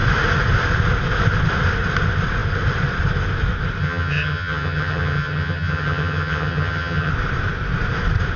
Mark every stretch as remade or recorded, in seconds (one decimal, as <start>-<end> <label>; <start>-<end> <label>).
0.0-3.8 recorded; 3.8-7.1 remade; 7.1-8.4 recorded